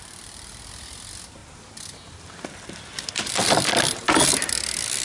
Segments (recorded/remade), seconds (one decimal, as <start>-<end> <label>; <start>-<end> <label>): 0.0-5.0 recorded